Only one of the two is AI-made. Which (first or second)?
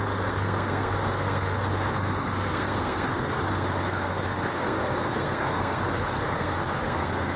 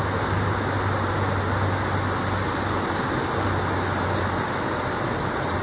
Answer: first